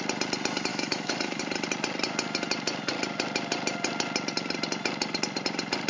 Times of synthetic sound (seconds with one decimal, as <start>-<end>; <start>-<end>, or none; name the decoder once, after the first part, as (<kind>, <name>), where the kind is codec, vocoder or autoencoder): 0.7-1.4 (autoencoder, DAC-VAE)